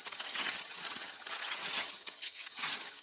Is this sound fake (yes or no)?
yes